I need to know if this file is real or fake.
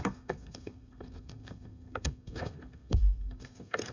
fake